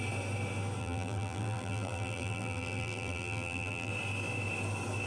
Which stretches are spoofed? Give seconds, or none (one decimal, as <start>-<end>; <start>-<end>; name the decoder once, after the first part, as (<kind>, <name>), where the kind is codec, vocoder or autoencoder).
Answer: 0.8-3.9 (vocoder, BigVGAN v2)